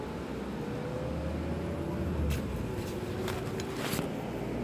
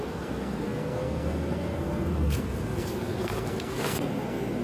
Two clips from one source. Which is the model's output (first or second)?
second